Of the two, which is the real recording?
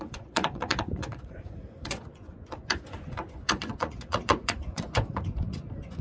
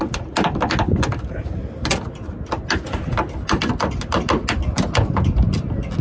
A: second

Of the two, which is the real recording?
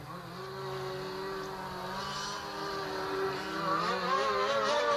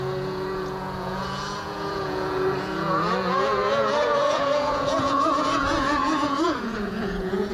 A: first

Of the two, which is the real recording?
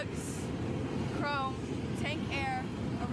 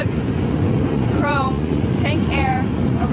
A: first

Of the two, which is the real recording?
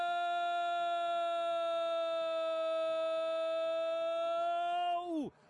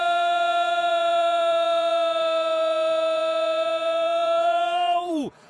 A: first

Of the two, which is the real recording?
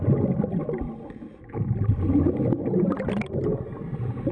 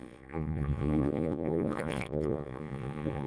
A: first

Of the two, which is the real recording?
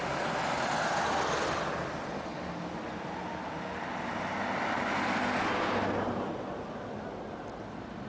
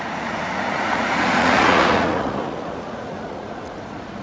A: first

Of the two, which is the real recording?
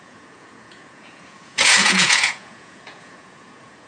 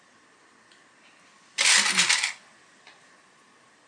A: second